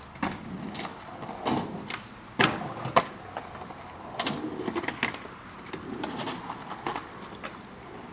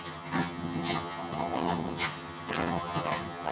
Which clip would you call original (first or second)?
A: first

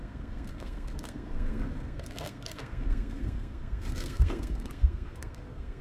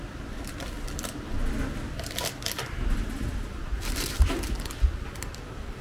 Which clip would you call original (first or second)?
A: second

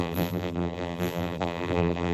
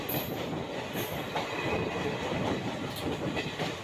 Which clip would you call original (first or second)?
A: second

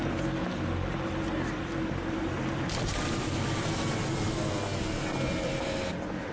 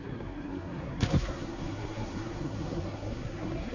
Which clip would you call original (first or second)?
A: first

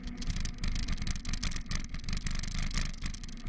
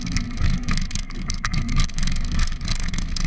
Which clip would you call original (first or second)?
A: first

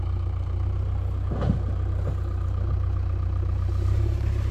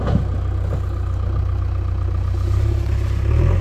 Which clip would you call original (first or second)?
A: second